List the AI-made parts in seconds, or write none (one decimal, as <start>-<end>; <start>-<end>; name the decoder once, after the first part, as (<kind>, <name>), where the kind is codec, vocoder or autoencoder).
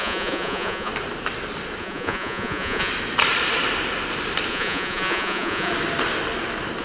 0.0-0.9 (vocoder, Vocos); 1.8-2.9; 4.5-5.7